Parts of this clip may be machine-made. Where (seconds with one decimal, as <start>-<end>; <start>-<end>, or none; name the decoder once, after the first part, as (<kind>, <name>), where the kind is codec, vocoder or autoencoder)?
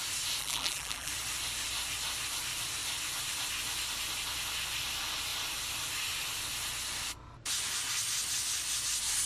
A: 0.4-1.1 (vocoder, BigVGAN v2)